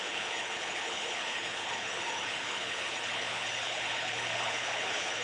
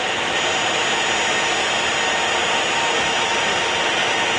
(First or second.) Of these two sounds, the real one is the second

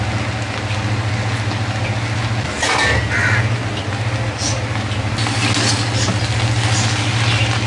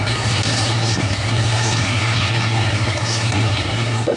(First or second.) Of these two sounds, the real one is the first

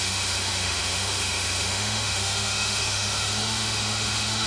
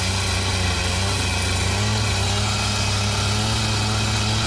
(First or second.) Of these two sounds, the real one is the second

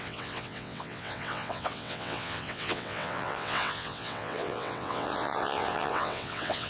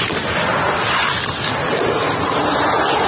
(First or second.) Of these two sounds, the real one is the second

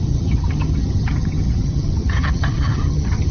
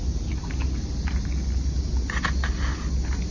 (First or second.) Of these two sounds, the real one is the second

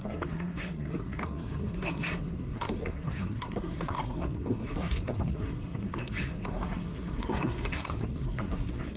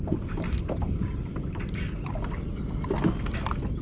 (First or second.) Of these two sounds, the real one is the second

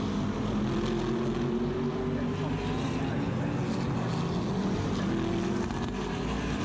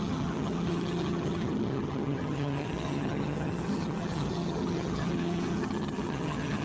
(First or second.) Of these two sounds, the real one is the first